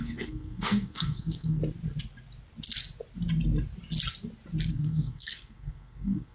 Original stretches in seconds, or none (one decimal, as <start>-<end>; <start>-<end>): 1.6-4.7

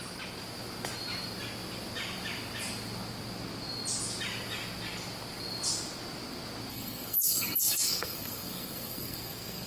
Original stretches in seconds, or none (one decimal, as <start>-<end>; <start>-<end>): 0.0-6.7

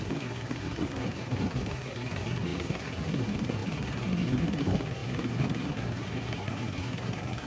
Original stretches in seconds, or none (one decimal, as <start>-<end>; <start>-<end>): none

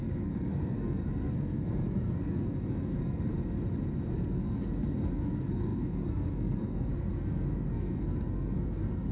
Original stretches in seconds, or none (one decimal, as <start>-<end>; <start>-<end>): 3.3-4.1

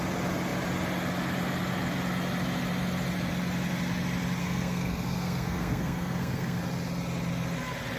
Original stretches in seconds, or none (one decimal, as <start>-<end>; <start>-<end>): 0.0-4.4; 6.6-8.0

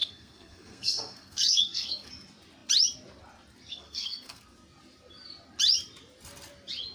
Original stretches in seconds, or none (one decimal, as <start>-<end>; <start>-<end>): 2.1-3.7; 4.4-6.9

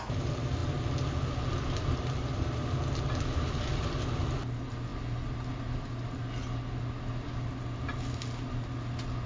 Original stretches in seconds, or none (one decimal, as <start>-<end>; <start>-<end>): 0.0-9.3

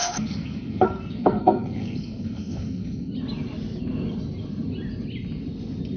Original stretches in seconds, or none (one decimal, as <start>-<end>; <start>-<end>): 3.1-6.0